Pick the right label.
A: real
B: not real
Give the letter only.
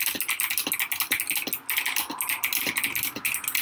A